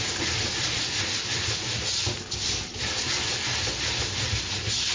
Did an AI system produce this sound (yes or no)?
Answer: no